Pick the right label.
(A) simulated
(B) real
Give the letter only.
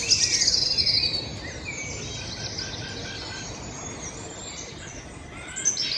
B